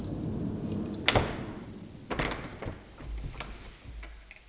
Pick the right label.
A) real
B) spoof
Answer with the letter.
A